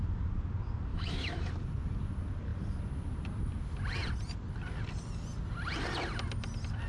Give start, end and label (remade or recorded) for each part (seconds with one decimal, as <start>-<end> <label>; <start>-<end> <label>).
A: 0.0-0.9 recorded; 0.9-1.5 remade; 1.5-6.9 recorded